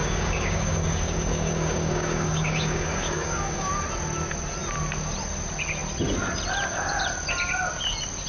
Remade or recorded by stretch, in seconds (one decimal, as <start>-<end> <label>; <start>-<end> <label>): 0.0-3.7 remade; 3.7-8.3 recorded